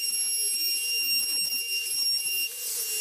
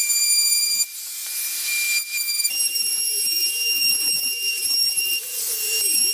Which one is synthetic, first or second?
second